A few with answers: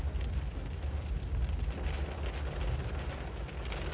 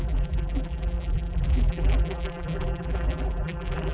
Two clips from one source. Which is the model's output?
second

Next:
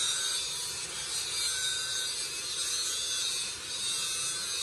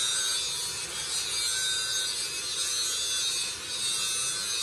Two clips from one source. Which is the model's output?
first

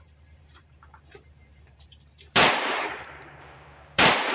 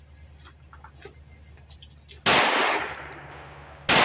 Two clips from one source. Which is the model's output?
first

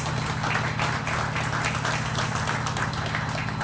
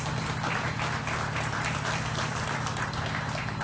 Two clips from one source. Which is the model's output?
second